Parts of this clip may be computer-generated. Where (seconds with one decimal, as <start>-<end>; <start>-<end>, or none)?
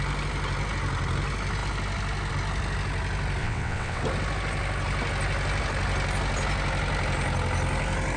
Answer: 3.4-4.0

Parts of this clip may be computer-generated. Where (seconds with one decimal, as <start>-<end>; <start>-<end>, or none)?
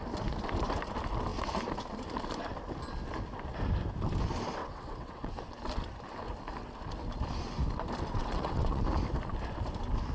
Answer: 4.6-5.4; 8.2-8.8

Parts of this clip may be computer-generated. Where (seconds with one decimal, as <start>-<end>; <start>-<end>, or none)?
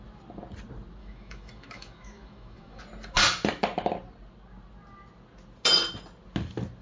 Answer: 1.0-2.8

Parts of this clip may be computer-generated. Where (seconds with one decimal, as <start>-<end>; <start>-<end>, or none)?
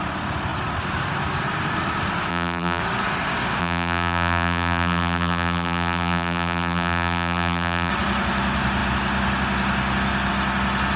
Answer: 2.3-2.8; 3.6-7.9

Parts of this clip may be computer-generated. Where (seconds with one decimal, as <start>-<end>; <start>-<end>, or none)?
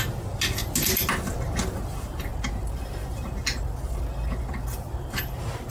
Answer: none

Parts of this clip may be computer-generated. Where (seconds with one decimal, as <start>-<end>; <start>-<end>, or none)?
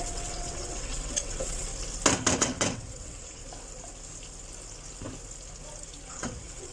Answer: 0.0-1.7; 2.4-3.4; 6.1-6.7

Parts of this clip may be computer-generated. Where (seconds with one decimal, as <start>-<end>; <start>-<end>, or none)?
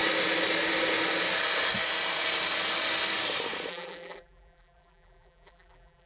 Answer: 3.7-6.1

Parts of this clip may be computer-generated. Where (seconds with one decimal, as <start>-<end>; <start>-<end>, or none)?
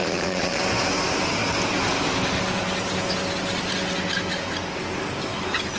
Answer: 0.0-0.6